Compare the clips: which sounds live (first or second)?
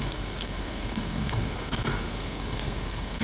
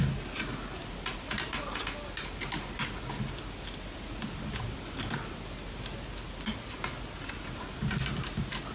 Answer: second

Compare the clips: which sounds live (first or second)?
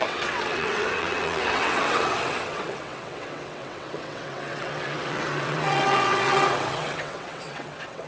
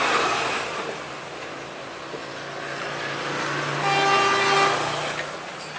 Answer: second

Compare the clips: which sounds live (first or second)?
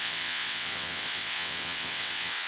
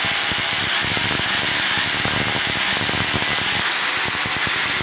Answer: second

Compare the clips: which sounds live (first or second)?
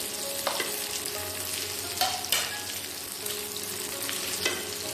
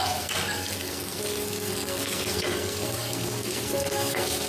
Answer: first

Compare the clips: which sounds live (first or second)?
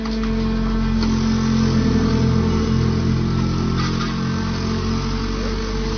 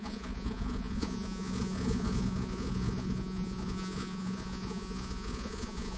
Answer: first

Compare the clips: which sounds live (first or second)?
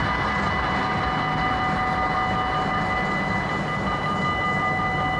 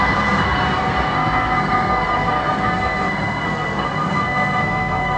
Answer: first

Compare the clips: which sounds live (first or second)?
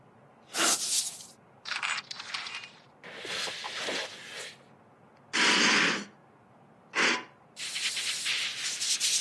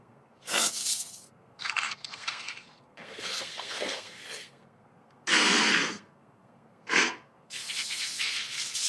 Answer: first